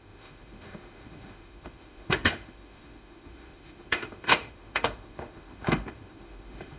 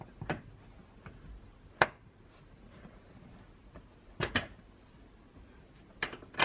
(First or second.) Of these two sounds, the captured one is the second